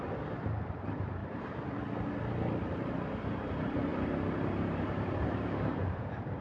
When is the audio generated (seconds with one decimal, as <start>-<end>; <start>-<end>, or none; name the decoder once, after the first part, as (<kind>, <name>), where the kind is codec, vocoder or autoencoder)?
0.0-1.2 (vocoder, BigVGAN v2); 2.9-6.4